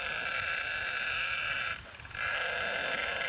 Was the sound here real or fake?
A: real